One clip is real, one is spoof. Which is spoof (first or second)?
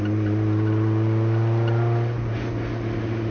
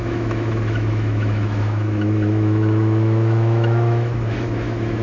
second